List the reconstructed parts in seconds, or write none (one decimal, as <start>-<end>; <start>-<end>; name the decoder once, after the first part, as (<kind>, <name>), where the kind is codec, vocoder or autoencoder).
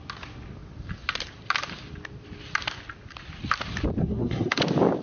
4.0-4.6 (codec, SNAC)